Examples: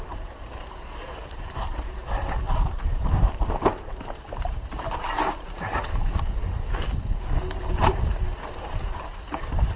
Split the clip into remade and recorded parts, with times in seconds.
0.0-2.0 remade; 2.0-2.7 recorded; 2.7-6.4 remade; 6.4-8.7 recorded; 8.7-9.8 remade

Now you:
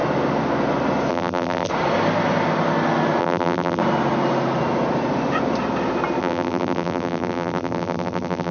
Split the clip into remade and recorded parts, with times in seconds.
0.0-1.1 recorded; 1.1-1.7 remade; 1.7-3.2 recorded; 3.2-3.8 remade; 3.8-6.2 recorded; 6.2-8.5 remade